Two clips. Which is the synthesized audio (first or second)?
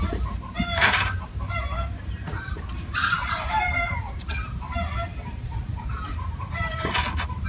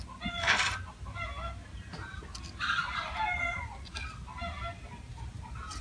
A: first